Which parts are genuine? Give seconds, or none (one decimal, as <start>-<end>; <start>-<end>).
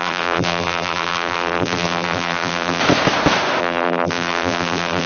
2.8-3.6